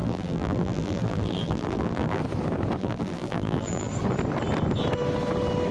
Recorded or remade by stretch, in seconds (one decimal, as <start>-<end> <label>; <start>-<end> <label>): 0.0-2.2 remade; 2.2-2.8 recorded; 2.8-3.9 remade; 3.9-5.7 recorded